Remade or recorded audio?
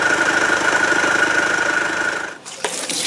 remade